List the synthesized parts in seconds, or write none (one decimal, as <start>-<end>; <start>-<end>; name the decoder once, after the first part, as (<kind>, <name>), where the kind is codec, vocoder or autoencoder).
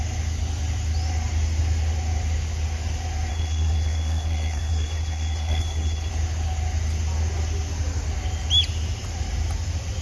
3.3-6.1 (codec, SNAC)